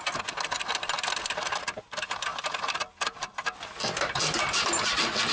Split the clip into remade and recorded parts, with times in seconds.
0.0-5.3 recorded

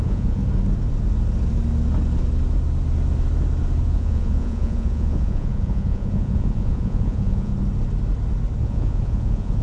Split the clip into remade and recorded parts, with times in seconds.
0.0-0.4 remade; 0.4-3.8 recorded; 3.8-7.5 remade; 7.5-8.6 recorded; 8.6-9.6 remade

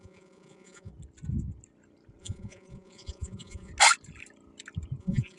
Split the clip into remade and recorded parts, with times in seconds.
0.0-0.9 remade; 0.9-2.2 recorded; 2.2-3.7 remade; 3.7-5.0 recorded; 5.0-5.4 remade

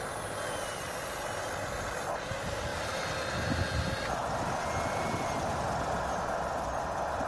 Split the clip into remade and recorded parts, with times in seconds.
0.0-7.3 recorded

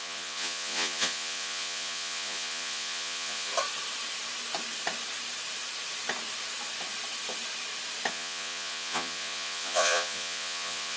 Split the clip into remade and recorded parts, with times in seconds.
0.0-3.5 remade; 3.5-8.1 recorded; 8.1-11.0 remade

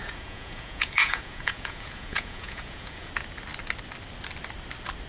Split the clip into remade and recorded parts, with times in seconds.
0.0-3.1 remade; 3.1-5.1 recorded

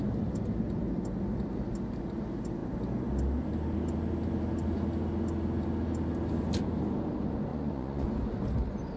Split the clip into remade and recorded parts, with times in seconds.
0.0-7.5 recorded; 7.5-8.1 remade; 8.1-9.0 recorded

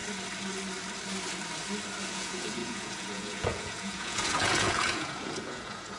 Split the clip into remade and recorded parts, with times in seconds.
0.0-2.1 recorded; 2.1-6.0 remade